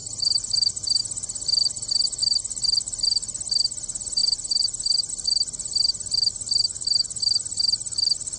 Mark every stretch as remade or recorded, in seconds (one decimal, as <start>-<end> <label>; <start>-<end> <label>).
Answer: 0.0-1.0 remade; 1.0-1.6 recorded; 1.6-2.2 remade; 2.2-4.2 recorded; 4.2-5.1 remade; 5.1-8.4 recorded